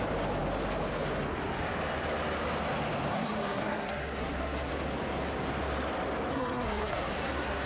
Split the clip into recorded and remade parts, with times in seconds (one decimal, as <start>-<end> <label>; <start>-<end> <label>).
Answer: 0.0-3.1 recorded; 3.1-4.7 remade; 4.7-6.3 recorded; 6.3-7.7 remade

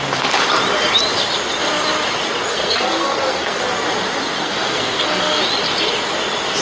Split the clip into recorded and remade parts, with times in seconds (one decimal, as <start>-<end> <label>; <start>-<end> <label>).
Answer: 0.0-2.5 recorded; 2.5-3.6 remade; 3.6-4.4 recorded; 4.4-5.4 remade; 5.4-6.6 recorded

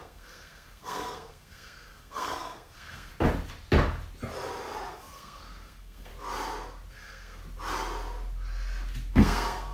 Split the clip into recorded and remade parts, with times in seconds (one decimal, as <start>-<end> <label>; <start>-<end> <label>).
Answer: 0.0-3.1 remade; 3.1-4.9 recorded; 4.9-6.1 remade; 6.1-6.9 recorded; 6.9-7.4 remade; 7.4-9.1 recorded; 9.1-9.7 remade

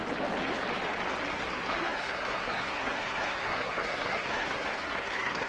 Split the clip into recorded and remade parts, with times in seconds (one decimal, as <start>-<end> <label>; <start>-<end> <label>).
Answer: 0.0-1.3 recorded; 1.3-5.5 remade

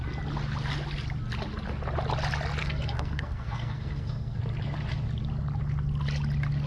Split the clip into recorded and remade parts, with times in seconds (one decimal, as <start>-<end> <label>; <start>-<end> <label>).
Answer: 0.0-2.6 recorded; 2.6-4.4 remade; 4.4-6.7 recorded